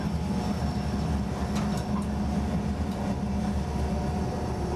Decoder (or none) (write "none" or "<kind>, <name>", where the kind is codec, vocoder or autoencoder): none